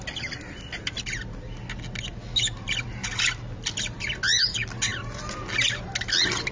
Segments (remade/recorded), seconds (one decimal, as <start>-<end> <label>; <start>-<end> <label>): 0.0-6.5 recorded